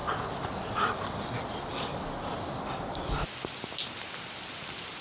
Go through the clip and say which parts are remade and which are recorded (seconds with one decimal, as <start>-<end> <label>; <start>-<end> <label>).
0.0-5.0 recorded